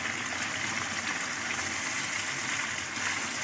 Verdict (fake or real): real